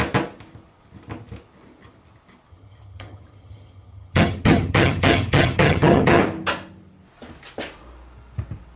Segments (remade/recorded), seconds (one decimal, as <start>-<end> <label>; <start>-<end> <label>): 0.0-2.5 recorded; 2.5-6.2 remade; 6.2-8.8 recorded